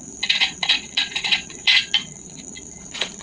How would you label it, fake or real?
fake